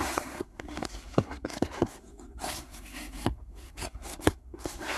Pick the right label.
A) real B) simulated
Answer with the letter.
B